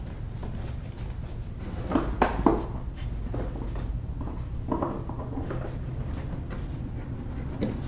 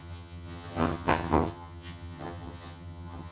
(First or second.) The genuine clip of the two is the first